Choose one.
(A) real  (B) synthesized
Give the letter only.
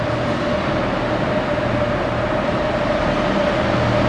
A